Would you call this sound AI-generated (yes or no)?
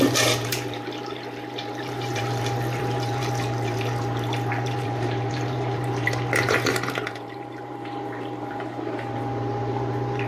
yes